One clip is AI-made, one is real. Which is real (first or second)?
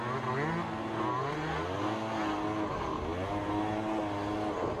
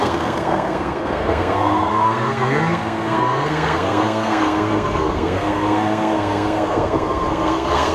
first